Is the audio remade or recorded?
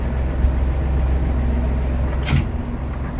recorded